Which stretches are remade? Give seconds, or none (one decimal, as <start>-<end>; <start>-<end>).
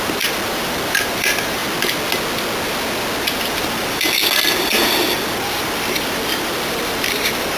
0.0-1.6; 3.2-7.6